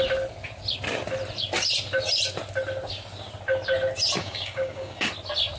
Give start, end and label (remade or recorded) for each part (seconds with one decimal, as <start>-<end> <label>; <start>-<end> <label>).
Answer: 0.0-4.2 recorded; 4.2-5.1 remade; 5.1-5.6 recorded